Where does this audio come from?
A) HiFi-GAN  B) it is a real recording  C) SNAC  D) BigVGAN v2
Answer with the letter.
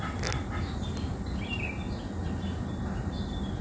B